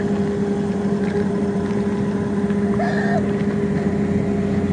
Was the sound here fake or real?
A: real